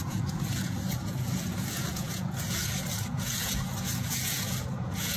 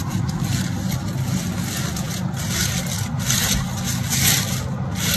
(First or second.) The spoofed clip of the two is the first